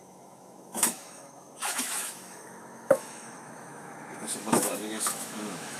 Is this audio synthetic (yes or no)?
yes